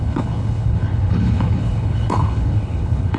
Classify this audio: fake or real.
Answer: fake